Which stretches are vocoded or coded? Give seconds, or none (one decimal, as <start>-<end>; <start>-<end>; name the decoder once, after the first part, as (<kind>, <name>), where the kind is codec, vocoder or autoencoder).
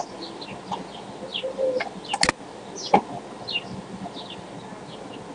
none